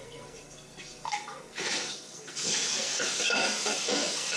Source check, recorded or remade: remade